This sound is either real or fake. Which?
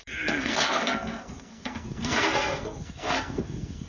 fake